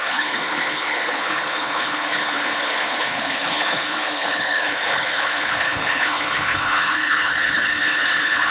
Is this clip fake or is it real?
fake